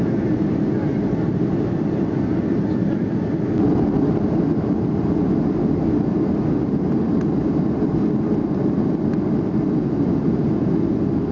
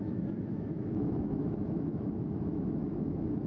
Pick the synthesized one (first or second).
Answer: second